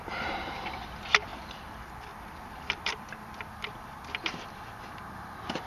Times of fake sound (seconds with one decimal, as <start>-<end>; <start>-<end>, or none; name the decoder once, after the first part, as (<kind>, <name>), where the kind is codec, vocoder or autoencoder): 0.0-5.7 (vocoder, BigVGAN v2)